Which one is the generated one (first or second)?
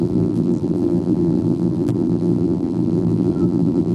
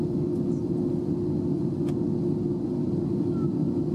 first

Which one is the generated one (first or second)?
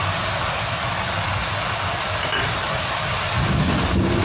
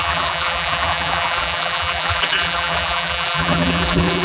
second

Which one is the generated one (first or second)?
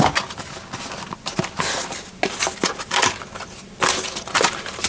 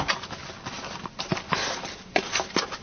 second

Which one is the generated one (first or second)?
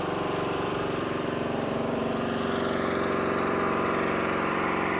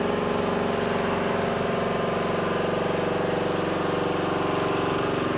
first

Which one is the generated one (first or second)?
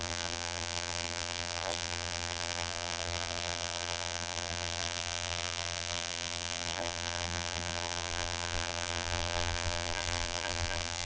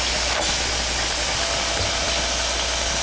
first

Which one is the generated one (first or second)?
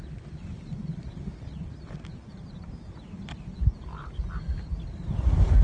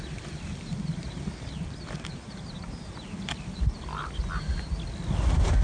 first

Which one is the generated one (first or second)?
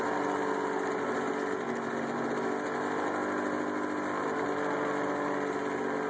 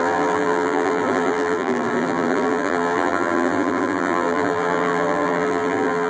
second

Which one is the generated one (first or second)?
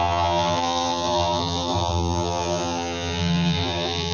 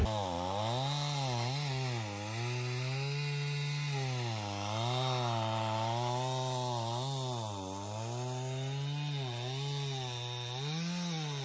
first